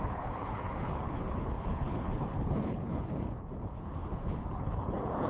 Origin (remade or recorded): remade